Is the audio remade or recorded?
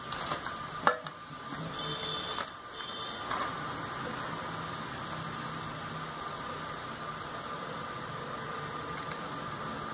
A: recorded